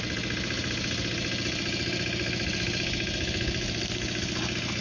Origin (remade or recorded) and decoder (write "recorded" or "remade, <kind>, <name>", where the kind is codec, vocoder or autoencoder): recorded